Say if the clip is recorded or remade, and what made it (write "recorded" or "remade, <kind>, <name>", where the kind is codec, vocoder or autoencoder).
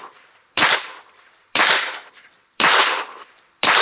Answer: remade, vocoder, BigVGAN v2